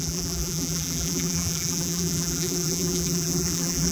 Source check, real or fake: fake